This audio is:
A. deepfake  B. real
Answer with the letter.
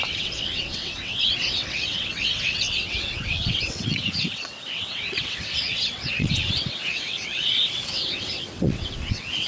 A